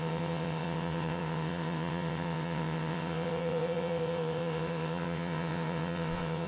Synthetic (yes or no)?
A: yes